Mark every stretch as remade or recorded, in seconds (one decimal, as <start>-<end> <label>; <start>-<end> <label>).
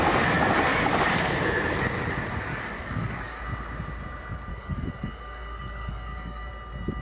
0.0-2.5 recorded; 2.5-3.4 remade; 3.4-4.5 recorded; 4.5-6.5 remade; 6.5-7.0 recorded